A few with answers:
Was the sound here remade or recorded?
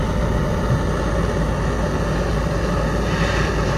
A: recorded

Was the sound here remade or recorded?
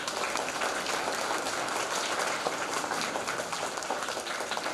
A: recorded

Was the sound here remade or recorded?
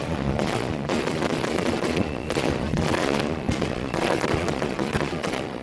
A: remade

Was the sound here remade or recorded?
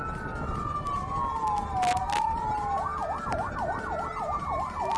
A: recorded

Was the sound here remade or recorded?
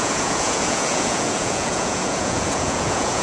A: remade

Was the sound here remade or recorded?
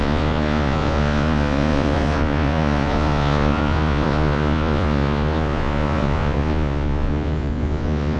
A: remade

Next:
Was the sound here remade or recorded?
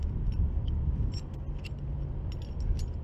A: recorded